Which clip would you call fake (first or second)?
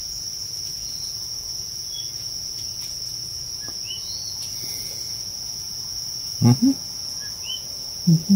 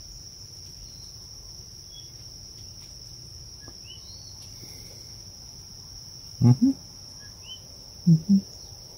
first